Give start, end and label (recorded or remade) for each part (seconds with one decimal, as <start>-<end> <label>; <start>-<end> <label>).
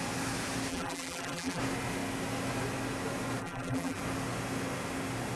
0.0-0.7 recorded; 0.7-1.6 remade; 1.6-3.4 recorded; 3.4-4.0 remade; 4.0-5.4 recorded